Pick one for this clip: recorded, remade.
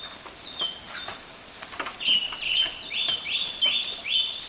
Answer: recorded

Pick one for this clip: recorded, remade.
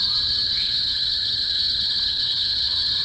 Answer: remade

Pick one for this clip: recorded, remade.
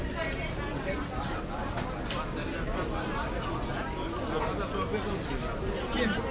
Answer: recorded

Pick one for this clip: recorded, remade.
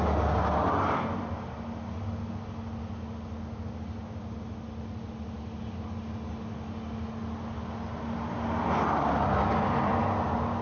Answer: recorded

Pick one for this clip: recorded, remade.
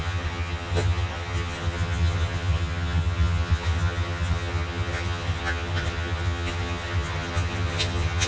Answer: remade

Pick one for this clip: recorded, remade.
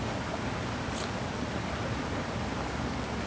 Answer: recorded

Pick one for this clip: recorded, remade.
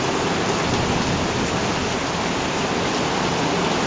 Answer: recorded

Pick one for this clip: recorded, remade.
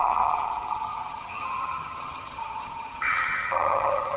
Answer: remade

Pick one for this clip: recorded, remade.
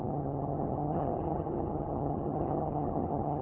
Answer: remade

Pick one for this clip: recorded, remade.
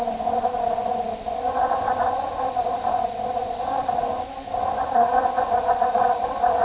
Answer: recorded